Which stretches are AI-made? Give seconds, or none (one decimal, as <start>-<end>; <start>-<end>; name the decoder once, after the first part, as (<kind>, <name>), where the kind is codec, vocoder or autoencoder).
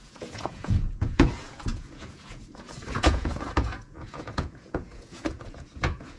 0.0-6.2 (vocoder, Vocos)